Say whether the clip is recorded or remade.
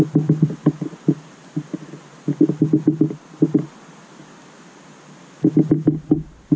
recorded